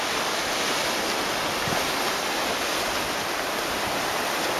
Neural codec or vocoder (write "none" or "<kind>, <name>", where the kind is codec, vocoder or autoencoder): none